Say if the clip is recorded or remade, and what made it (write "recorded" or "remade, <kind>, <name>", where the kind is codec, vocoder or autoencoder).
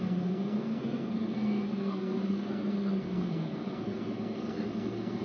remade, codec, SNAC